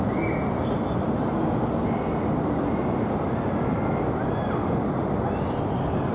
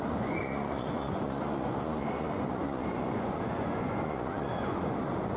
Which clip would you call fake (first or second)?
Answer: second